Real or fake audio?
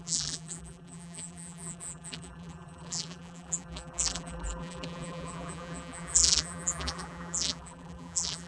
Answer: fake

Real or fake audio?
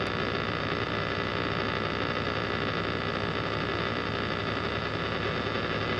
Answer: real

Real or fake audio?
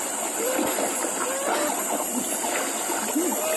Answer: real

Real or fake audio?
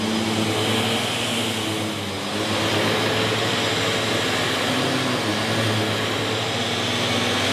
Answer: real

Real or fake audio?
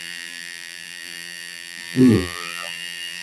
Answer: fake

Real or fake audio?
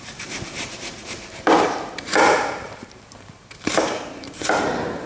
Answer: fake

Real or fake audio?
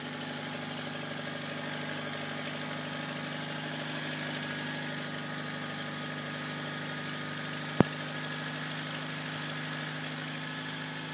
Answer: real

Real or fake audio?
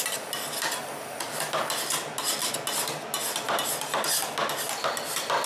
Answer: real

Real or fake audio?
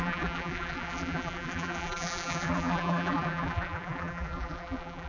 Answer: fake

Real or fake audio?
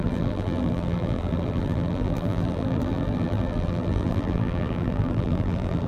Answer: fake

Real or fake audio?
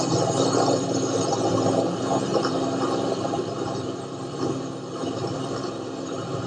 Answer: fake